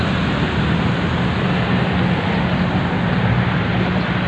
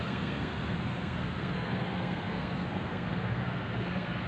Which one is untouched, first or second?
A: first